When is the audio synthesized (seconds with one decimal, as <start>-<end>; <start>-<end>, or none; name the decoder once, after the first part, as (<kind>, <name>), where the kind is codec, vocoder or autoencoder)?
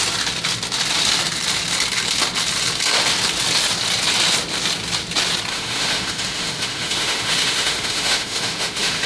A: 5.5-9.1 (autoencoder, DAC-VAE)